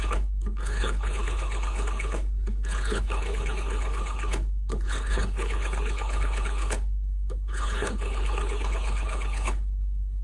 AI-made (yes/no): yes